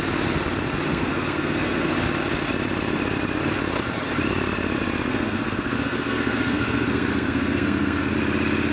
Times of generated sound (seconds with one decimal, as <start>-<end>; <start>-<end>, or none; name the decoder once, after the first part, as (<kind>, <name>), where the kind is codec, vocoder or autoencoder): 0.9-1.9 (codec, SNAC); 5.1-8.1